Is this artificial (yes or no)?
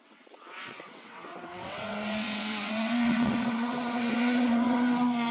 yes